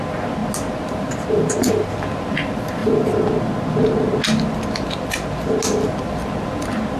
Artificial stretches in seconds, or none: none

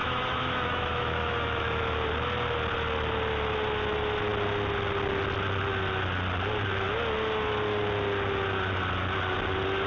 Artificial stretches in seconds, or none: 0.0-1.8